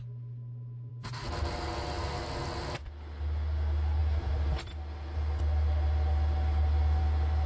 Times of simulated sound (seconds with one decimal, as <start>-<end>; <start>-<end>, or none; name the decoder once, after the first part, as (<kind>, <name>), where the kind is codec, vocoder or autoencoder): none